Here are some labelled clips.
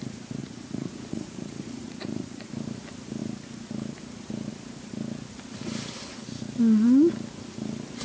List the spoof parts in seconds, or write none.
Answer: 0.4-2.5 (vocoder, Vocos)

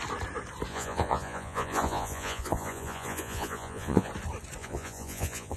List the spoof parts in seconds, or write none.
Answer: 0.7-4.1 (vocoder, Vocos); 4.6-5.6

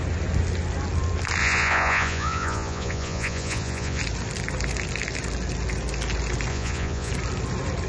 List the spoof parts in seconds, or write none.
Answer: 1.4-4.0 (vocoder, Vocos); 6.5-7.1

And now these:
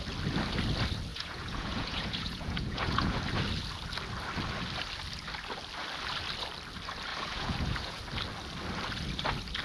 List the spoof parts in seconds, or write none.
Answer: 1.1-3.2 (vocoder, Vocos); 7.1-8.0

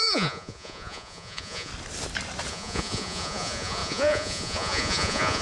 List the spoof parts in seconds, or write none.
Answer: 0.0-1.7 (vocoder, Vocos); 2.5-5.4